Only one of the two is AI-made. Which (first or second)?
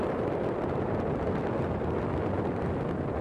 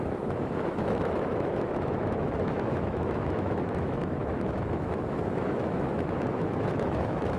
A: second